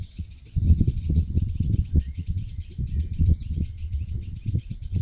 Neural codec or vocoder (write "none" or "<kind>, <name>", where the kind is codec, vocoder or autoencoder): vocoder, WaveNeXt